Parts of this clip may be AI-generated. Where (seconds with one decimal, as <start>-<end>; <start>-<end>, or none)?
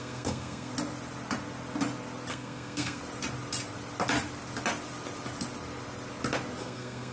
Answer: 0.0-0.7; 2.3-3.0; 6.6-7.1